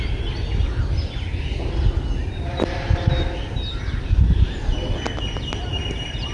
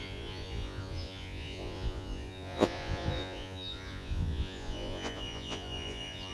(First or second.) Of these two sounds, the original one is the first